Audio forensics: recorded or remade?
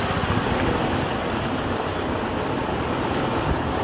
remade